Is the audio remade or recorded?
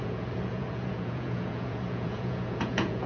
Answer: remade